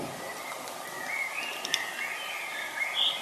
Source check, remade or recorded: recorded